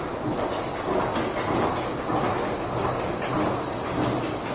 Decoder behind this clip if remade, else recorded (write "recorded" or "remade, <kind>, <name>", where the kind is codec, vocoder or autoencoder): recorded